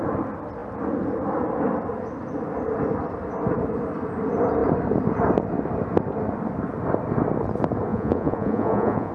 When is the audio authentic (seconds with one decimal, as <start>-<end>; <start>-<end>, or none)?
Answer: 0.0-7.9